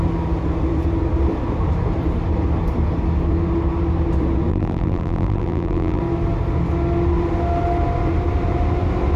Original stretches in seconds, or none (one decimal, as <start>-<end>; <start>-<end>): 0.0-4.5; 6.0-9.2